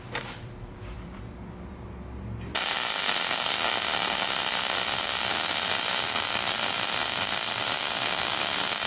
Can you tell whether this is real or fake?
fake